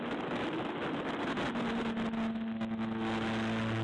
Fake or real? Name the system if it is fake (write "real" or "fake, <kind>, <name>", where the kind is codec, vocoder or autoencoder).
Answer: real